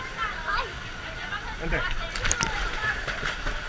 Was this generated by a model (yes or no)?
yes